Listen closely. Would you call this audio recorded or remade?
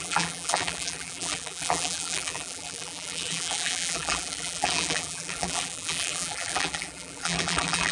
remade